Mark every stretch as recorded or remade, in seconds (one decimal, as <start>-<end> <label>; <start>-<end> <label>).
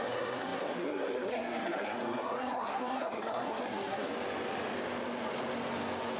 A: 0.0-4.1 remade; 4.1-6.2 recorded